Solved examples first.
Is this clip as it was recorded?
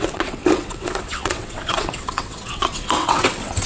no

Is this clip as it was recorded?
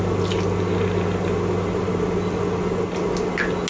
yes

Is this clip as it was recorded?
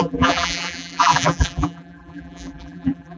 no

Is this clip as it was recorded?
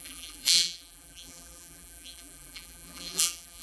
no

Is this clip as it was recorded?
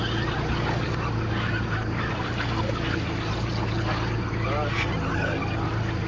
yes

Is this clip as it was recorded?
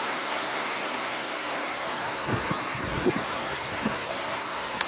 no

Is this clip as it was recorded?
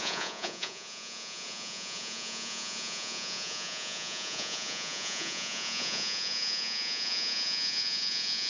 no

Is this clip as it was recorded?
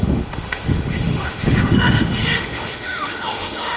no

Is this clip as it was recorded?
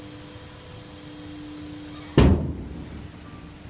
yes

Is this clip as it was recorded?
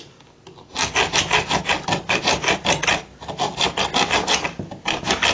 yes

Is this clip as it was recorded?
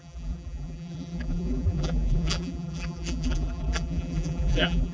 no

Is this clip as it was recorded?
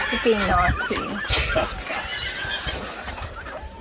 yes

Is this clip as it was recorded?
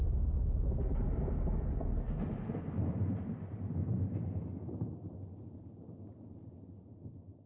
yes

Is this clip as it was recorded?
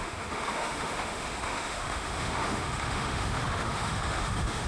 no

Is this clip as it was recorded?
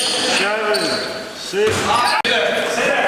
yes